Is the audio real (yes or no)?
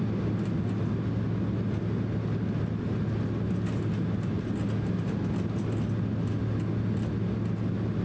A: yes